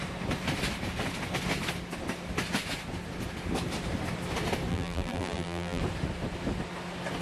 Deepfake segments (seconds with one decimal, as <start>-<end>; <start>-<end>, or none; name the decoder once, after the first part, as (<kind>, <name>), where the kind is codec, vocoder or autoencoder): 4.7-5.8 (vocoder, BigVGAN v2)